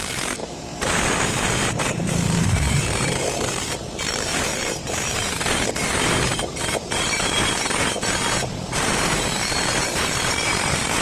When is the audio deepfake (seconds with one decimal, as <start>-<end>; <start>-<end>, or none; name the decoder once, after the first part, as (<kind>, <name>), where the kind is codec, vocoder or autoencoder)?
0.0-0.4 (vocoder, BigVGAN v2); 1.8-11.0